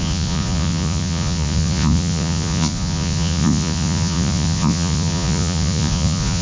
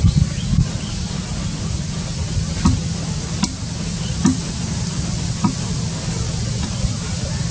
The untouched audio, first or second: second